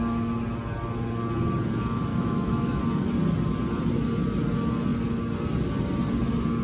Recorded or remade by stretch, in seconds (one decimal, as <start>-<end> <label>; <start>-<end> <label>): 0.0-2.1 recorded; 2.1-2.8 remade; 2.8-6.6 recorded